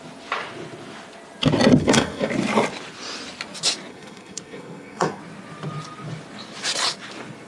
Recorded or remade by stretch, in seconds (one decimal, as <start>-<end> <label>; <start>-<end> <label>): 0.0-1.8 recorded; 1.8-2.3 remade; 2.3-3.9 recorded; 3.9-5.2 remade; 5.2-7.5 recorded